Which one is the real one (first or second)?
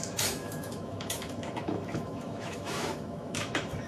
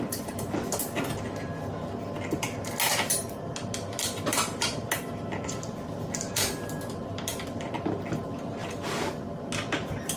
second